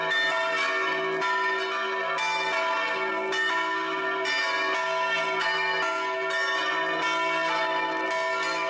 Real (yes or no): yes